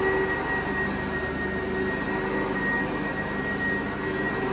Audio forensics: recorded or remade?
recorded